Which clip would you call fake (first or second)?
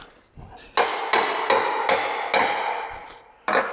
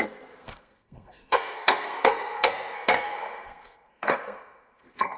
second